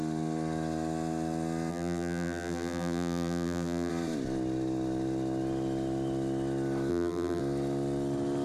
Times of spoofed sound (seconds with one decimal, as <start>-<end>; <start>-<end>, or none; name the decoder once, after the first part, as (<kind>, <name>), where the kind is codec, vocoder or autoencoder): 1.7-3.9 (vocoder, BigVGAN v2); 6.9-7.4